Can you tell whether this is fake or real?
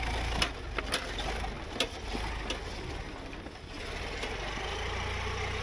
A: real